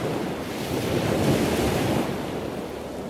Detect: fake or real real